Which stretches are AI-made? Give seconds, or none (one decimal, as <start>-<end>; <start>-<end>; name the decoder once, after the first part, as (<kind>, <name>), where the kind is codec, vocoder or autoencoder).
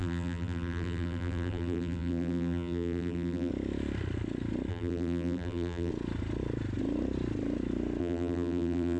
0.0-3.5 (vocoder, BigVGAN v2); 4.7-5.9; 8.0-9.0